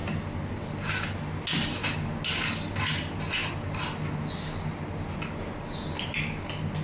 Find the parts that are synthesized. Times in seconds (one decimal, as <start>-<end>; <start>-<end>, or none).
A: none